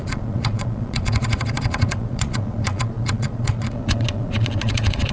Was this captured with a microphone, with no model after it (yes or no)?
no